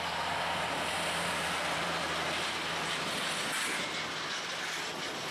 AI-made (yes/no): yes